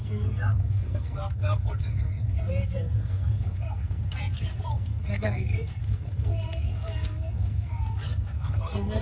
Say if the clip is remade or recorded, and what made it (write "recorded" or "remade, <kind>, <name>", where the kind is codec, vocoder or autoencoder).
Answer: remade, codec, SNAC